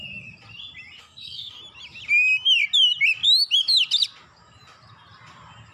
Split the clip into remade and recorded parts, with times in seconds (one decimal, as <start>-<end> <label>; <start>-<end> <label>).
0.0-1.0 recorded; 1.0-1.6 remade; 1.6-5.7 recorded